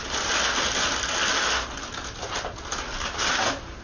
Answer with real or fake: real